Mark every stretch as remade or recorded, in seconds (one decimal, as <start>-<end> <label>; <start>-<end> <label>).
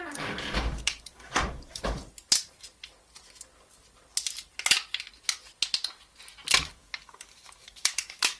0.0-2.0 remade; 2.0-6.6 recorded; 6.6-8.4 remade